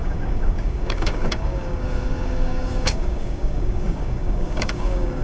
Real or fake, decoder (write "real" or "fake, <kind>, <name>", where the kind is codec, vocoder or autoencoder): fake, codec, DAC